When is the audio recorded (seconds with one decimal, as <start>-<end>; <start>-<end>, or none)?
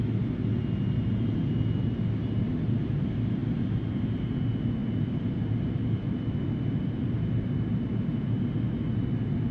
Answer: 0.0-9.5